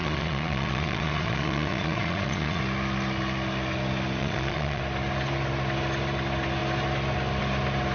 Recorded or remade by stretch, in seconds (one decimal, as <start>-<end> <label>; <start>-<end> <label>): 0.0-2.6 remade; 2.6-4.2 recorded; 4.2-4.8 remade; 4.8-7.9 recorded